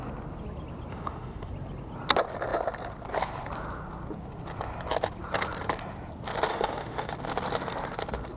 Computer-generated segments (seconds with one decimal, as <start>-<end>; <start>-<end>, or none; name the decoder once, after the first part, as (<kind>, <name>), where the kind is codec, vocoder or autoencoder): 0.9-1.5 (autoencoder, DAC-VAE); 6.5-7.1